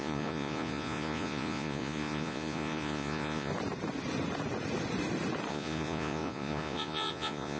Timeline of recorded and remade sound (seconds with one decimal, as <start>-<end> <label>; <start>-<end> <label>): 0.0-3.5 remade; 3.5-5.5 recorded; 5.5-7.6 remade